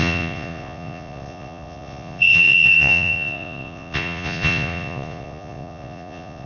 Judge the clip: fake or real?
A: fake